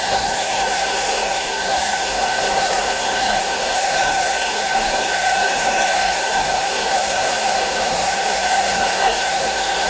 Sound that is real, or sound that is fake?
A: fake